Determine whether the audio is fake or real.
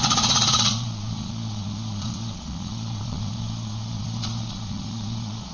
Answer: fake